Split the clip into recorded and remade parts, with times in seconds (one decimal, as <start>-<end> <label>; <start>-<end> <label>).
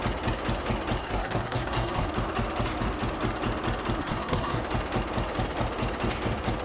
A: 0.0-1.0 recorded; 1.0-2.1 remade; 2.1-4.0 recorded; 4.0-4.6 remade; 4.6-6.6 recorded